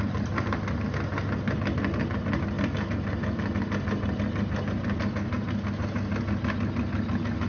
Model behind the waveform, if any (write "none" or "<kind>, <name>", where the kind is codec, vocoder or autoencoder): none